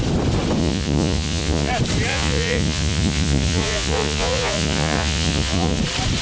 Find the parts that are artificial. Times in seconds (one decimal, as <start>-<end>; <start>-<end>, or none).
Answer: 0.6-1.7; 2.1-5.8